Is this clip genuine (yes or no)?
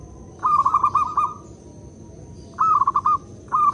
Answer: yes